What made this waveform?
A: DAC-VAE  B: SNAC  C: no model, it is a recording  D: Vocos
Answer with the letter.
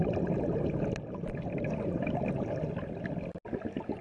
C